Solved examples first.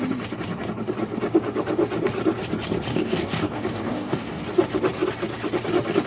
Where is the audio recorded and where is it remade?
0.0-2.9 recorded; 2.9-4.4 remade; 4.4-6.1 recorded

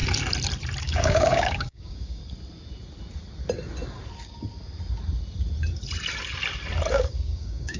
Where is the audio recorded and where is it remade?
0.0-0.8 recorded; 0.8-2.2 remade; 2.2-6.9 recorded; 6.9-7.8 remade

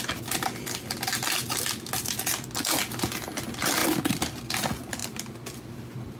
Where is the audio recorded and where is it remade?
0.0-6.2 recorded

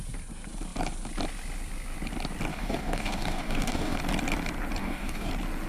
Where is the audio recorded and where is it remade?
0.0-2.5 recorded; 2.5-4.0 remade; 4.0-4.8 recorded; 4.8-5.3 remade; 5.3-5.7 recorded

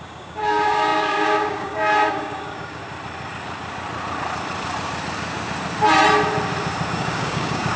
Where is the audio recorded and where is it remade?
0.0-2.8 remade; 2.8-6.9 recorded; 6.9-7.8 remade

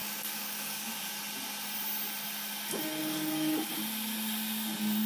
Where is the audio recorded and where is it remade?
0.0-1.1 remade; 1.1-3.0 recorded; 3.0-3.7 remade; 3.7-5.1 recorded

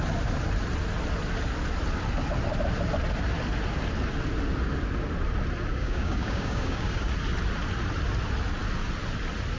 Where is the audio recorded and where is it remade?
0.0-5.7 recorded; 5.7-7.1 remade; 7.1-9.6 recorded

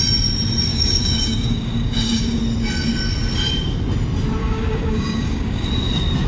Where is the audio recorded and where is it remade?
0.0-0.7 recorded; 0.7-2.4 remade; 2.4-4.4 recorded; 4.4-5.7 remade; 5.7-6.3 recorded